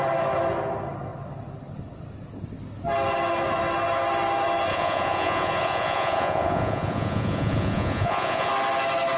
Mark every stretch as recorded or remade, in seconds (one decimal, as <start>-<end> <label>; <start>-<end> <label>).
0.0-4.7 recorded; 4.7-8.5 remade; 8.5-9.2 recorded